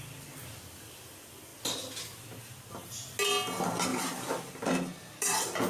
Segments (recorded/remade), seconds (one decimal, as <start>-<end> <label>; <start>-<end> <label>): 0.0-3.9 recorded; 3.9-4.5 remade; 4.5-5.7 recorded